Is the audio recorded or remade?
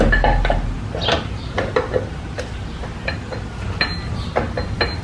recorded